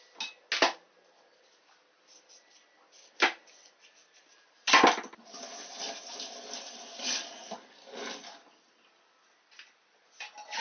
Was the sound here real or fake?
real